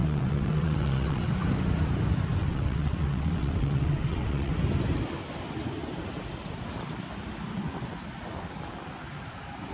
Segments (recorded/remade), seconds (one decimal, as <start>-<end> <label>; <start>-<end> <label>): 0.0-1.3 remade; 1.3-2.4 recorded; 2.4-4.5 remade; 4.5-9.7 recorded